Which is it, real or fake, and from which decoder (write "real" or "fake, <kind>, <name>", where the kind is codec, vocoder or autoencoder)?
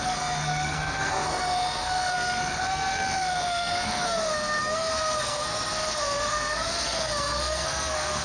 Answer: fake, codec, SNAC